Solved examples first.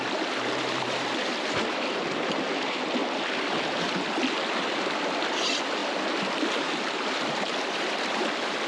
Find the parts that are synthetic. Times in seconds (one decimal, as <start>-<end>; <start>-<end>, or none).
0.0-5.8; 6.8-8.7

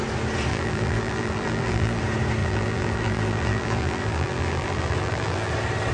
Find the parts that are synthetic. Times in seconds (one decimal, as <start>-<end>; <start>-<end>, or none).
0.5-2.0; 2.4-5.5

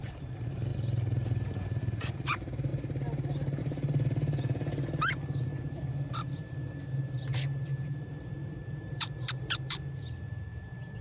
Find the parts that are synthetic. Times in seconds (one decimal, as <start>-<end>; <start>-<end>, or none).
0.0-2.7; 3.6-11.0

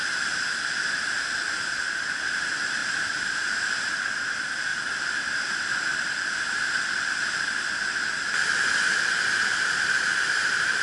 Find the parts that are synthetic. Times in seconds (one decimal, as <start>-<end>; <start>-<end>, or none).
2.8-4.3

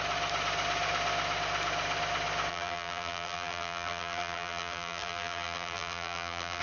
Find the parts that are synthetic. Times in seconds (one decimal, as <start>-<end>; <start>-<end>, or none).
2.5-6.6

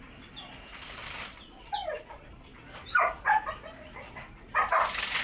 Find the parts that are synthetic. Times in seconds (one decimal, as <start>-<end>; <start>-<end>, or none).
0.0-2.5

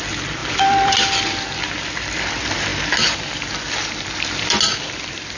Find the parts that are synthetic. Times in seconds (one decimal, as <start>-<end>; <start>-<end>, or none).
0.4-0.9